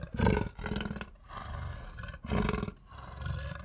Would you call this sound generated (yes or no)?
no